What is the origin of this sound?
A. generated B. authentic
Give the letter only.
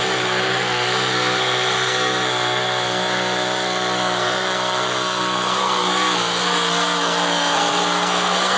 A